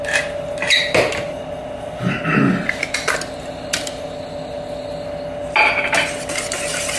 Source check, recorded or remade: recorded